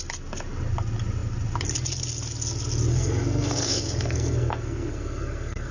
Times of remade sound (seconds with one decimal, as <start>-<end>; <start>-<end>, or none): 2.9-5.7